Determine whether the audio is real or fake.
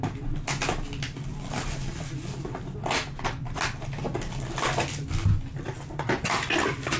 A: real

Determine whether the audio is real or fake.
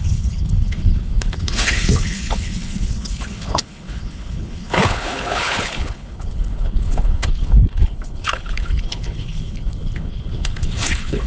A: fake